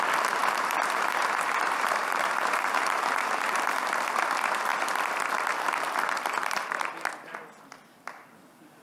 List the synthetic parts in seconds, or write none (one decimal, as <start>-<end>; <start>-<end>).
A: 0.4-3.8; 6.4-6.9